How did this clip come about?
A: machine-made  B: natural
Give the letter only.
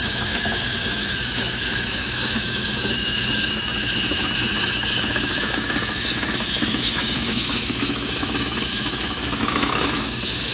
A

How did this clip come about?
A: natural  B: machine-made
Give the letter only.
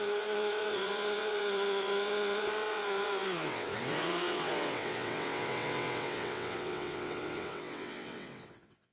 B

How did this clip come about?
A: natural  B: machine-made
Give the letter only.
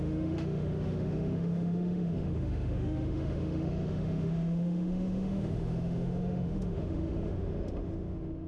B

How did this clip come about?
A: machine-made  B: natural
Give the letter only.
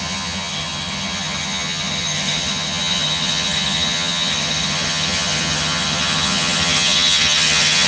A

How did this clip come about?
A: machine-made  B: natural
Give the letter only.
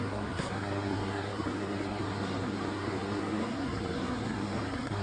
A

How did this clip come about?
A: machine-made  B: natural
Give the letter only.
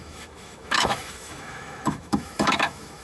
A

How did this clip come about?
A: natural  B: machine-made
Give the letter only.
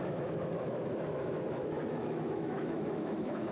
B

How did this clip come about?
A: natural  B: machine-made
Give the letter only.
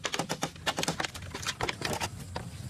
A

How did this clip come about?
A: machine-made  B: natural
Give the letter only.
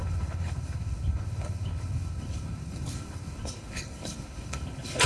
A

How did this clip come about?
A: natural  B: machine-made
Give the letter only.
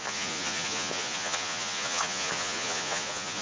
B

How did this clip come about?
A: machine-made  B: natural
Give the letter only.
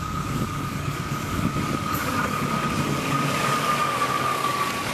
A